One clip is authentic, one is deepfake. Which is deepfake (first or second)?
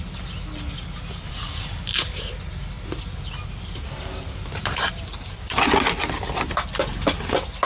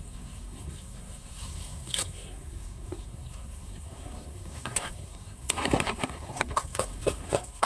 second